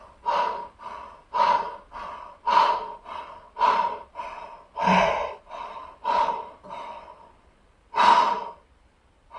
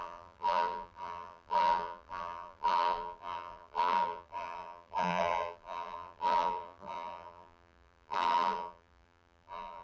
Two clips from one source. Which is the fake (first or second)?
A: second